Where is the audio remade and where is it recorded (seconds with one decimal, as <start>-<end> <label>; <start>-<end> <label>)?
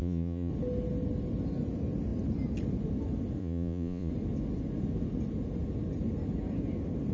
0.0-0.5 remade; 0.5-3.4 recorded; 3.4-4.1 remade; 4.1-7.1 recorded